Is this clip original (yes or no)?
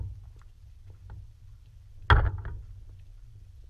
yes